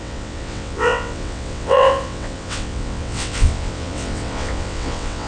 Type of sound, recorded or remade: remade